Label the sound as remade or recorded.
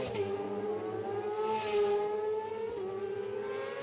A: recorded